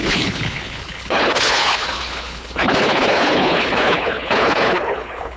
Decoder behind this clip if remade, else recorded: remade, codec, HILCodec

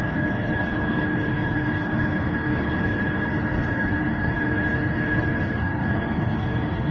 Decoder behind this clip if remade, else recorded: remade, codec, HILCodec